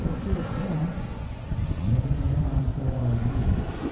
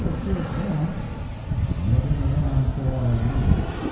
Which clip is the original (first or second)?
second